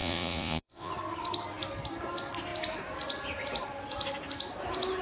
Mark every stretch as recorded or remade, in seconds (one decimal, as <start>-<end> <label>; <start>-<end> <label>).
0.0-0.9 remade; 0.9-5.0 recorded